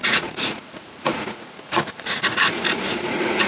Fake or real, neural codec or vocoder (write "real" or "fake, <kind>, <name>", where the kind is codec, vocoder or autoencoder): fake, vocoder, Vocos